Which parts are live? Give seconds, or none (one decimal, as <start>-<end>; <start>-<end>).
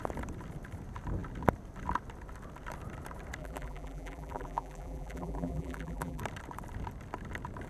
0.0-3.4; 6.2-7.7